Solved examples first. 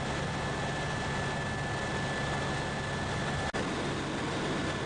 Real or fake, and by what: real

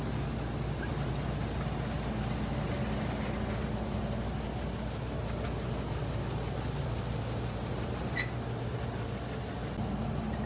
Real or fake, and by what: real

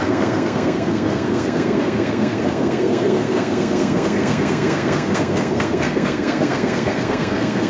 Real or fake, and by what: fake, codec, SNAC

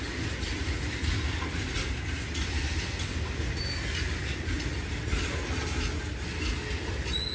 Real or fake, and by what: real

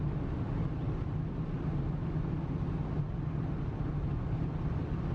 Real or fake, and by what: real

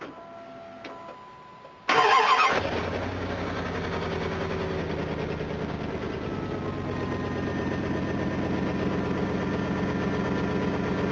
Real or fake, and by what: real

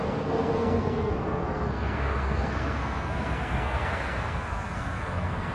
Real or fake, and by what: fake, codec, SNAC